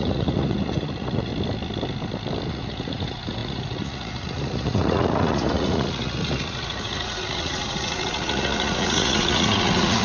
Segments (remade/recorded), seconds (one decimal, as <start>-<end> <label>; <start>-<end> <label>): 0.0-1.3 remade; 1.3-2.5 recorded; 2.5-10.0 remade